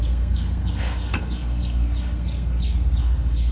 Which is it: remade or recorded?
remade